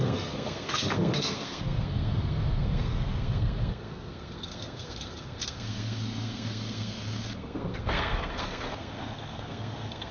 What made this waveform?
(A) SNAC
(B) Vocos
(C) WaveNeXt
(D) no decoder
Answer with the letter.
A